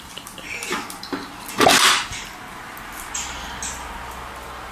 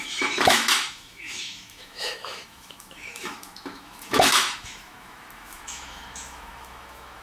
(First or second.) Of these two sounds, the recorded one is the first